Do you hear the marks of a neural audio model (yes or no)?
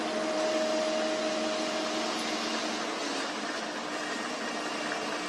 no